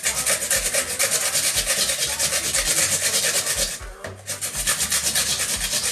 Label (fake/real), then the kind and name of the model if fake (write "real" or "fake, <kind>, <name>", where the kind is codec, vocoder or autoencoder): real